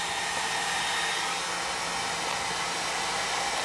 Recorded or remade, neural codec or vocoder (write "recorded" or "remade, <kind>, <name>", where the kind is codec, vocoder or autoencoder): recorded